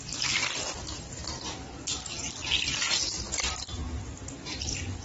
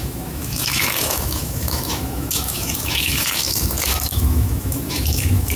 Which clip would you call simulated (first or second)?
second